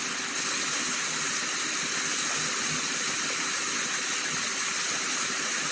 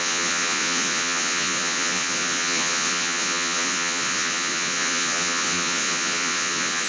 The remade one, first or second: second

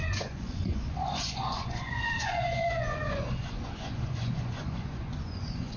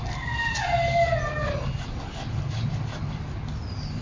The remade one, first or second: first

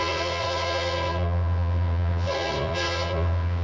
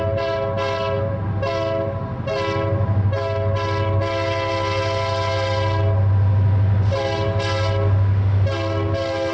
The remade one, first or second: first